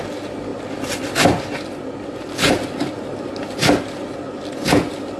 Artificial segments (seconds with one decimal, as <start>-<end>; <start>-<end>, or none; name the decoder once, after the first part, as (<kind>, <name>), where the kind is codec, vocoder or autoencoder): none